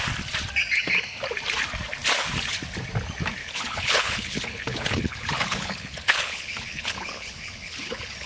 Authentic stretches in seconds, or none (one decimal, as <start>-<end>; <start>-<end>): 0.0-3.4